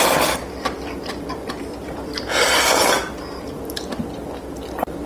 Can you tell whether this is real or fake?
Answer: real